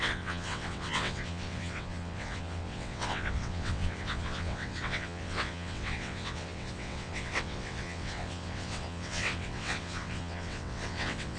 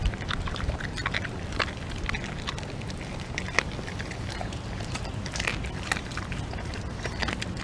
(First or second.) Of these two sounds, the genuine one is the second